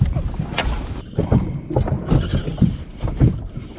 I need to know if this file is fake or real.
real